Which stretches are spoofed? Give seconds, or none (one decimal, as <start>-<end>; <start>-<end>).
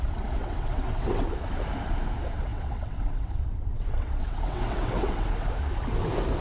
0.4-1.2; 2.5-5.5